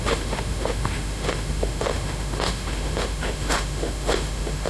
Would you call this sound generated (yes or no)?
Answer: yes